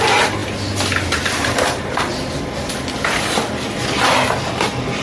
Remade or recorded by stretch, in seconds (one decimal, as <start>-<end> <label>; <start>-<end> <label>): 0.0-0.4 recorded; 0.4-2.7 remade; 2.7-5.0 recorded